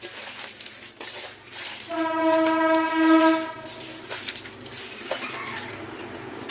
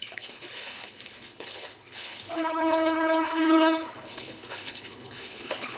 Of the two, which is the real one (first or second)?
first